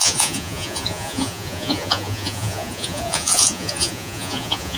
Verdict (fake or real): fake